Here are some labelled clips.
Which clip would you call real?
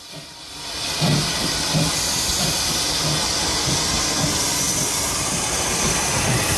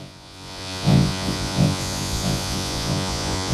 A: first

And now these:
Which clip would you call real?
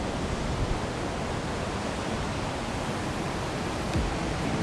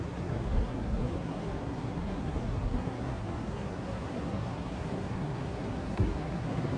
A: first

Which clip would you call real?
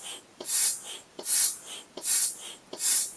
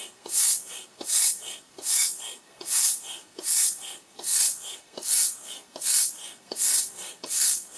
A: first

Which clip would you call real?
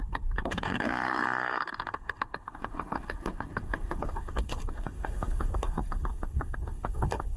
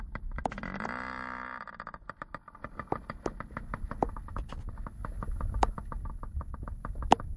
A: second